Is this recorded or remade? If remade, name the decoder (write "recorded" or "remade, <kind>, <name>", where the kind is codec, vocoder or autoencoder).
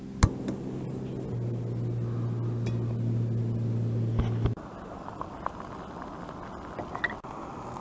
recorded